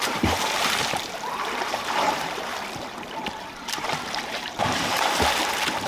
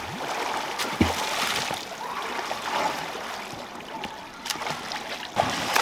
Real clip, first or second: second